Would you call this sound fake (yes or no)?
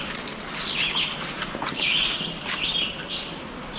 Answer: no